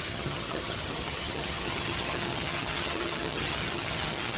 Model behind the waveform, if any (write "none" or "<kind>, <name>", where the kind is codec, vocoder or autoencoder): vocoder, HiFi-GAN